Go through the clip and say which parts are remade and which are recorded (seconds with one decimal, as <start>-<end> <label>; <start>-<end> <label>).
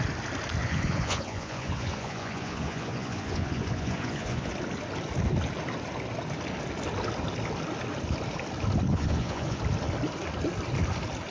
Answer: 0.0-0.6 recorded; 0.6-4.5 remade; 4.5-8.9 recorded; 8.9-9.6 remade; 9.6-11.3 recorded